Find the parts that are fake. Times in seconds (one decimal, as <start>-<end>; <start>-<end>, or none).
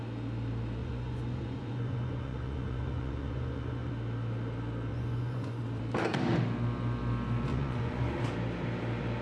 0.8-3.9; 4.9-5.6; 7.5-8.2